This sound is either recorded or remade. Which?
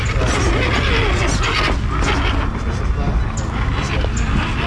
recorded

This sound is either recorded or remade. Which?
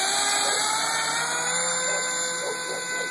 recorded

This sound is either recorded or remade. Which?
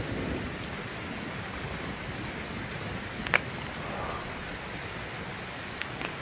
recorded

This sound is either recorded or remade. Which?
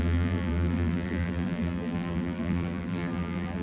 remade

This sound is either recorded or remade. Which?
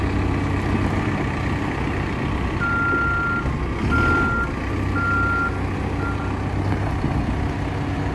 recorded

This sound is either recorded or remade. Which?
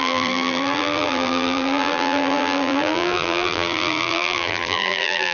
remade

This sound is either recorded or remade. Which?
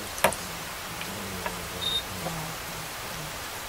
remade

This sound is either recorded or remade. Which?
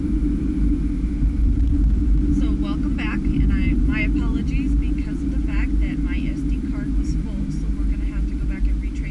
recorded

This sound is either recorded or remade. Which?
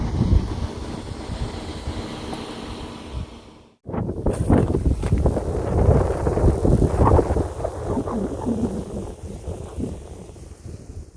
recorded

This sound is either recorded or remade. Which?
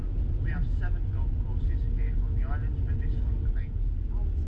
recorded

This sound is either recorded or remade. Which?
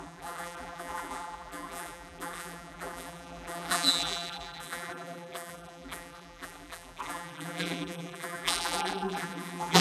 remade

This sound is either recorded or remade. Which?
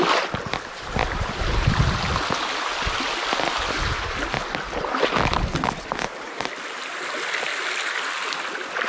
recorded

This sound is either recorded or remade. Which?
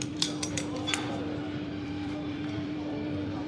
remade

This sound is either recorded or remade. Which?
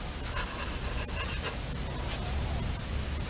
recorded